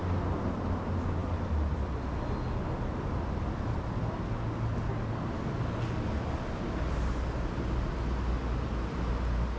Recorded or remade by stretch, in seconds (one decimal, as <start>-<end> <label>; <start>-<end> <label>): 0.0-9.6 recorded